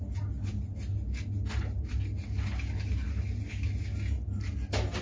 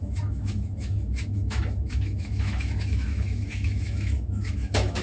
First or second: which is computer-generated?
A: second